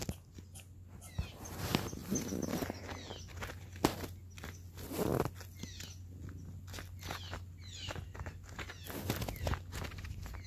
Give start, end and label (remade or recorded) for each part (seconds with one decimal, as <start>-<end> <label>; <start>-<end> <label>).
0.0-10.5 recorded